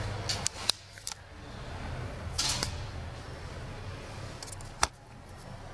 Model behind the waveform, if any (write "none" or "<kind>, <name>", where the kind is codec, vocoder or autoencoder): none